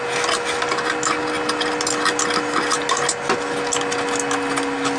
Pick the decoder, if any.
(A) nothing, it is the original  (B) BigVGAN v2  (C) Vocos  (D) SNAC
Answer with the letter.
A